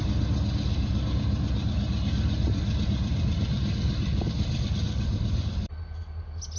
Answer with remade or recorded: recorded